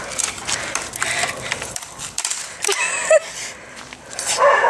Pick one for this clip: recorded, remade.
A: remade